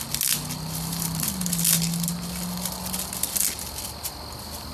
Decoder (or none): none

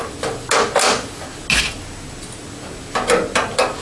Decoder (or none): none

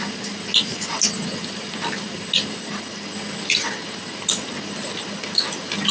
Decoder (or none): none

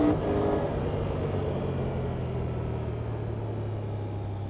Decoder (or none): none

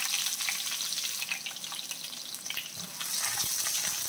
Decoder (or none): none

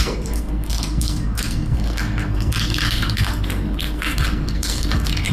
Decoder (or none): codec, SNAC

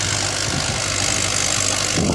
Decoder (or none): none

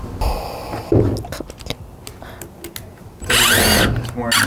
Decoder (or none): none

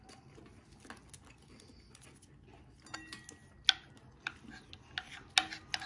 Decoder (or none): none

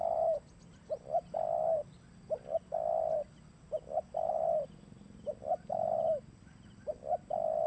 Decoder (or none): none